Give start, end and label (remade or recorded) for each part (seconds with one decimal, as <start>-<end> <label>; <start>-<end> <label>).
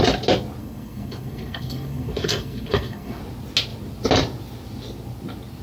0.0-0.6 recorded; 0.6-3.2 remade; 3.2-5.6 recorded